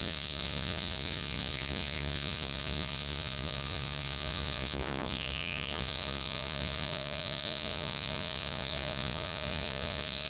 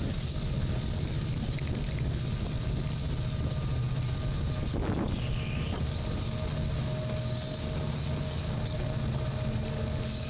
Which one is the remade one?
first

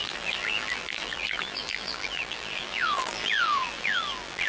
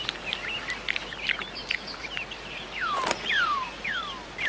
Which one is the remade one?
first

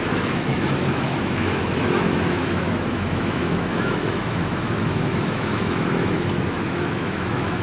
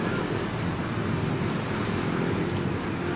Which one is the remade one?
first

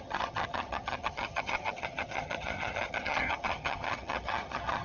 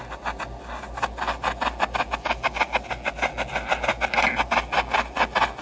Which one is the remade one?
first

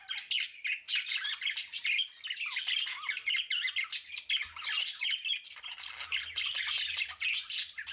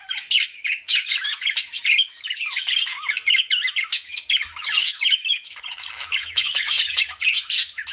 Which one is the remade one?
second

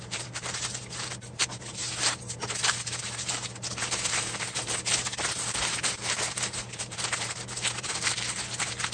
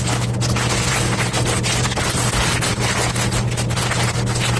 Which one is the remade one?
first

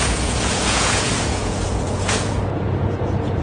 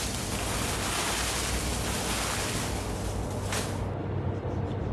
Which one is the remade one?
first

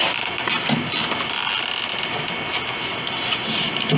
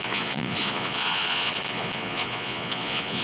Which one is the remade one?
second